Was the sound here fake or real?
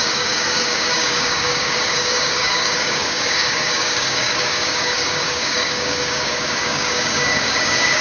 fake